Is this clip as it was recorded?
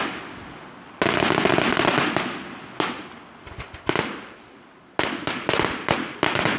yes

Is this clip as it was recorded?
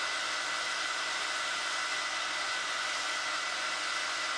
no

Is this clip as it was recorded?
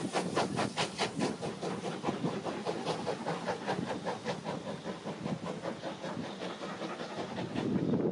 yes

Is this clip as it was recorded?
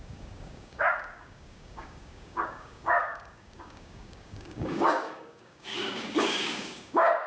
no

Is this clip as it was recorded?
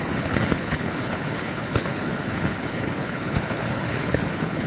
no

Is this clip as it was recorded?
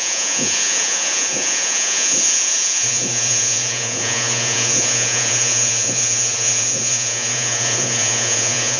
no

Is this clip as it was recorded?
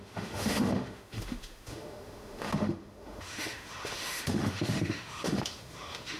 no